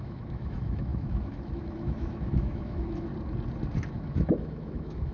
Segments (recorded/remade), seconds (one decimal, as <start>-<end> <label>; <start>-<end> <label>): 0.0-3.1 remade; 3.1-3.9 recorded; 3.9-5.1 remade